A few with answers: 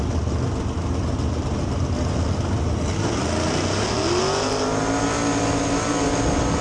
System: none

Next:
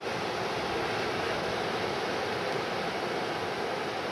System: none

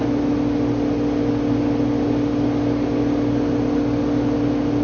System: none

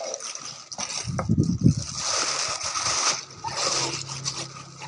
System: none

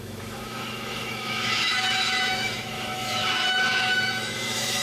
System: autoencoder, DAC-VAE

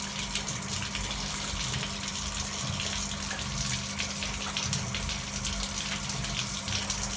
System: none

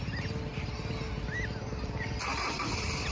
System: none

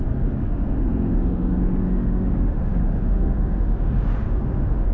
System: autoencoder, DAC-VAE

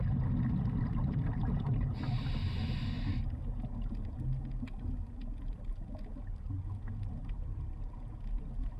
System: none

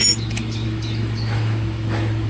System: autoencoder, DAC-VAE